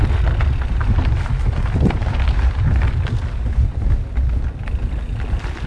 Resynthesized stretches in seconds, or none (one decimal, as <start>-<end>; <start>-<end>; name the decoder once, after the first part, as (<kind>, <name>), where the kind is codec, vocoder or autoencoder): none